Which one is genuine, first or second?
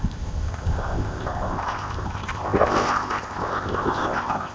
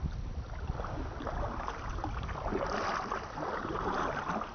second